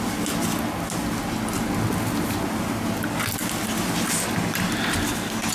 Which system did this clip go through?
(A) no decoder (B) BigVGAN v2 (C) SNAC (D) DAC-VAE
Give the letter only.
A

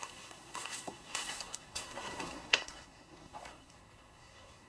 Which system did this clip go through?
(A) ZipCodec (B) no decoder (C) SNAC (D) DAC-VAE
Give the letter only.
C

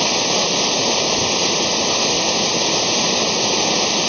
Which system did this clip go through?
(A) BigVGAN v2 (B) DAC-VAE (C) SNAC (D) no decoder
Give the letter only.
D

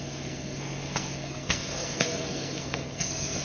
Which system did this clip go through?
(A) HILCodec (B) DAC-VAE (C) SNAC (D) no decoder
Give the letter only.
C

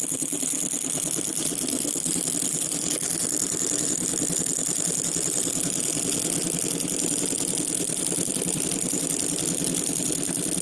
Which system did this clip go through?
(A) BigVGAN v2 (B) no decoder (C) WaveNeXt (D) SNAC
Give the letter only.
B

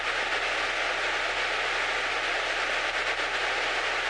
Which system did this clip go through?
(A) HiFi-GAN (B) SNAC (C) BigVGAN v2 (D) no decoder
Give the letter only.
D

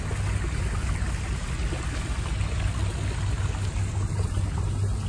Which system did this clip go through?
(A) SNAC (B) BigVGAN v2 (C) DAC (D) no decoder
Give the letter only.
D